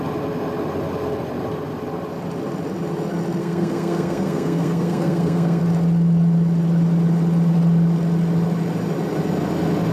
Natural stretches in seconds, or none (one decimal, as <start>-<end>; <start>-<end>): 0.0-3.4; 5.6-9.9